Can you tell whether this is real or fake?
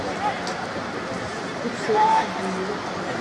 real